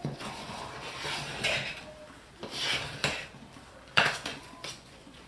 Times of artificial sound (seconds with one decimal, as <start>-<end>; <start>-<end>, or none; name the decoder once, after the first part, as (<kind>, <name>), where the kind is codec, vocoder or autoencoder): 0.0-0.7 (vocoder, Vocos); 3.9-5.3